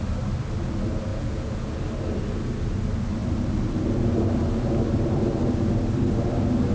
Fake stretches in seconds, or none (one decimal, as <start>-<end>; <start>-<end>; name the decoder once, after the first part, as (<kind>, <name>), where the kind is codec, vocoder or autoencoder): 1.1-1.8 (vocoder, Vocos)